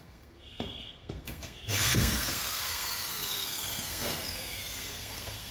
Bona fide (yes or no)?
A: no